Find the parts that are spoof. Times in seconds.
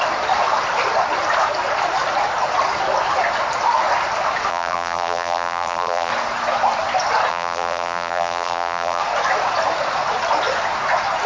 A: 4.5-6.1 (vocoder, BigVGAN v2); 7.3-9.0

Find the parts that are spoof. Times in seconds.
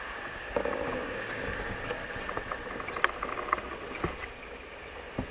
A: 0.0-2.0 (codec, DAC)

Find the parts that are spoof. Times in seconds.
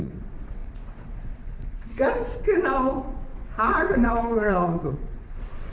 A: 0.0-5.7 (vocoder, WaveNeXt)